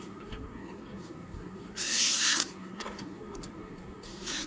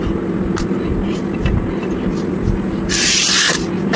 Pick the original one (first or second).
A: second